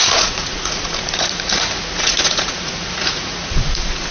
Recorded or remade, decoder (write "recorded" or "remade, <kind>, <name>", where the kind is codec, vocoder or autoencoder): remade, vocoder, Vocos